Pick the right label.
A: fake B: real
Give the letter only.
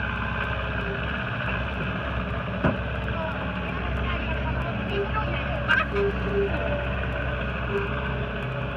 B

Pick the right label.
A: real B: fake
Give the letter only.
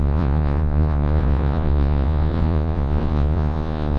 B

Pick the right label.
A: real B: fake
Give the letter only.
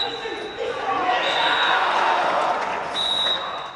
B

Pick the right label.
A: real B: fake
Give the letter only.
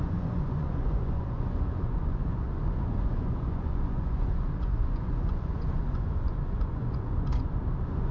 B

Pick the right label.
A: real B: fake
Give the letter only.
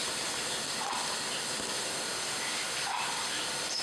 A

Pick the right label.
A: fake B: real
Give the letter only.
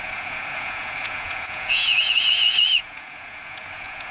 A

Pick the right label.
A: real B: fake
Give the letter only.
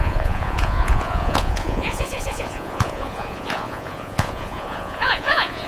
B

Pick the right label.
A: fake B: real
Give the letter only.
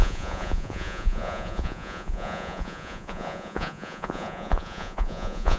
A